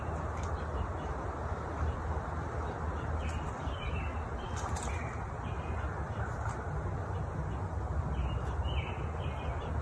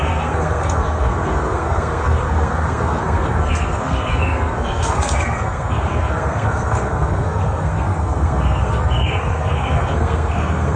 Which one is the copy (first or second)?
second